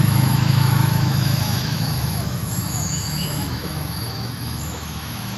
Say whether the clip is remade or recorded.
remade